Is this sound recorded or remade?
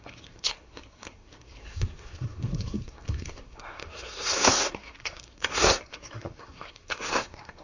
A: remade